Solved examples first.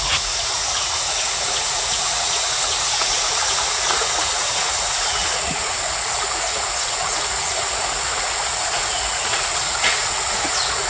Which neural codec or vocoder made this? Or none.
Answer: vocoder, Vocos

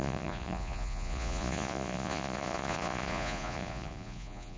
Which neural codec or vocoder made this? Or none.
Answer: vocoder, Vocos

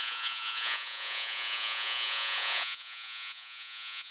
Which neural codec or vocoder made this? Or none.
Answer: vocoder, Vocos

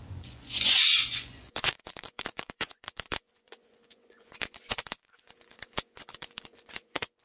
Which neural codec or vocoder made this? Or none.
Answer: vocoder, Vocos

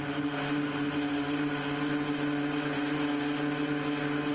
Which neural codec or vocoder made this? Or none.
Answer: none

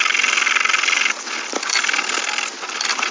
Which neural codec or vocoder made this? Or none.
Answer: none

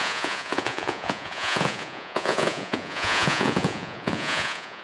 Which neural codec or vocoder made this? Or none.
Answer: vocoder, Vocos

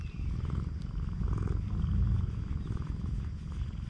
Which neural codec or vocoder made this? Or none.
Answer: none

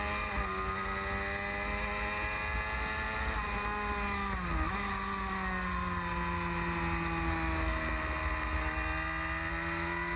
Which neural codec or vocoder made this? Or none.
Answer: none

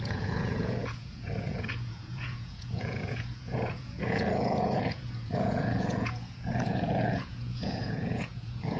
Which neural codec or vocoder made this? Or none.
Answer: vocoder, Vocos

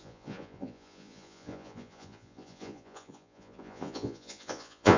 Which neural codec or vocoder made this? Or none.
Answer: vocoder, Vocos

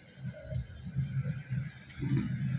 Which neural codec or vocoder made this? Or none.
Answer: none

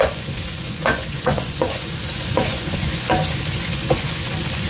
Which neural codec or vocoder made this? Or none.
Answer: vocoder, Vocos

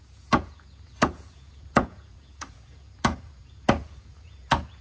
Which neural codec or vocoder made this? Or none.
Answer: vocoder, Vocos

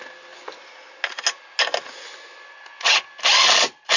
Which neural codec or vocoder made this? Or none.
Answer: none